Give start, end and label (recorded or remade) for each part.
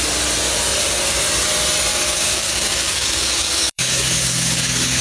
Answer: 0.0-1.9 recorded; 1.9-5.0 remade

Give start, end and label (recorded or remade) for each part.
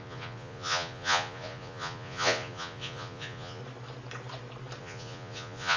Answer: 0.0-3.6 remade; 3.6-4.8 recorded; 4.8-5.8 remade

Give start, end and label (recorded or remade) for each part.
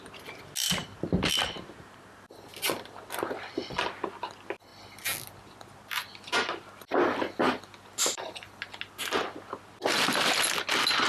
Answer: 0.0-11.1 recorded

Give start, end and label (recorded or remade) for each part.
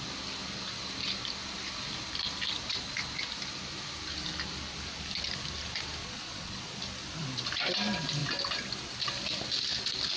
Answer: 0.0-6.0 recorded; 6.0-6.8 remade; 6.8-10.2 recorded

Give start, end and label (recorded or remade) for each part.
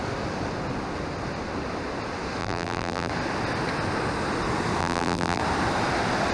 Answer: 0.0-2.4 recorded; 2.4-3.1 remade; 3.1-4.8 recorded; 4.8-5.4 remade; 5.4-6.3 recorded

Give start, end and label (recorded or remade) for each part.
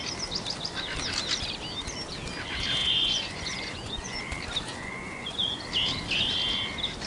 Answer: 0.0-2.8 recorded; 2.8-4.2 remade; 4.2-4.7 recorded; 4.7-5.6 remade; 5.6-7.1 recorded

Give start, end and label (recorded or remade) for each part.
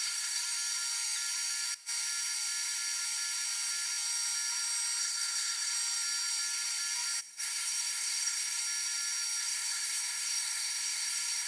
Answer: 0.0-0.4 remade; 0.4-5.0 recorded; 5.0-5.7 remade; 5.7-7.2 recorded; 7.2-8.6 remade; 8.6-9.4 recorded; 9.4-11.5 remade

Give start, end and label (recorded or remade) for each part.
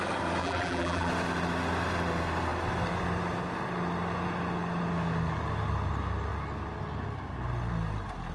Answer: 0.0-0.4 recorded; 0.4-1.1 remade; 1.1-8.3 recorded